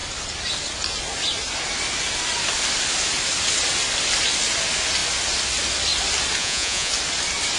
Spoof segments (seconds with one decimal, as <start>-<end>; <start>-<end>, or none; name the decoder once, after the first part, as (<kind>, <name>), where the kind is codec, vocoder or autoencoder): 6.4-6.9 (vocoder, Vocos)